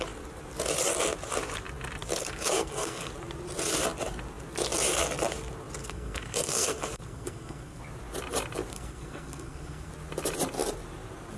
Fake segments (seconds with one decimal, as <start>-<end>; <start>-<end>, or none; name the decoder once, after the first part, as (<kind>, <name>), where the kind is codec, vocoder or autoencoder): 2.2-3.1 (codec, SNAC); 5.8-7.8; 8.7-9.9